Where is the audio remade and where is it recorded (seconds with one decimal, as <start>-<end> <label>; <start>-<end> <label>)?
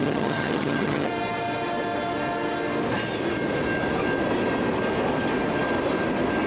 0.0-1.1 remade; 1.1-6.5 recorded